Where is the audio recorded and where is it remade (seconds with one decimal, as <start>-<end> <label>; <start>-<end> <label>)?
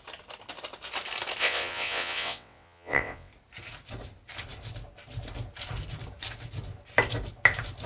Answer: 0.0-1.4 recorded; 1.4-3.3 remade; 3.3-7.9 recorded